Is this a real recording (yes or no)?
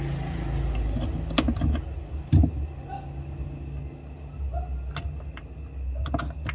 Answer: yes